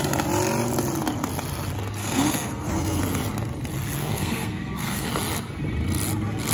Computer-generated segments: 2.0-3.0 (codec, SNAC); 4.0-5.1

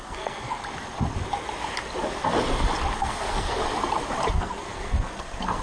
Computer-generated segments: 0.0-0.6 (codec, SNAC); 3.0-3.6; 4.3-5.6

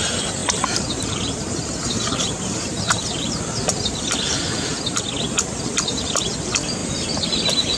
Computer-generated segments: 0.4-3.4 (vocoder, BigVGAN v2); 6.8-7.3